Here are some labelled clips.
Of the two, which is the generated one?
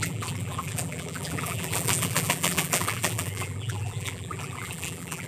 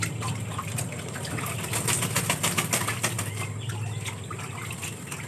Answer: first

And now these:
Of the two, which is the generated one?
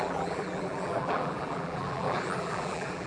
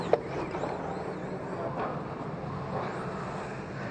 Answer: first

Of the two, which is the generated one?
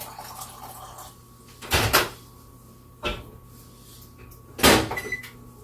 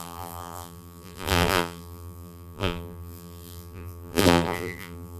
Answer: second